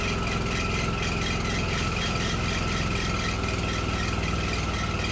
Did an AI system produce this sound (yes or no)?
no